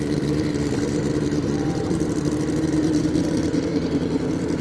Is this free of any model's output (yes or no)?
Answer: no